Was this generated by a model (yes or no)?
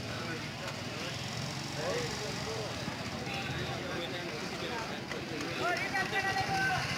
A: no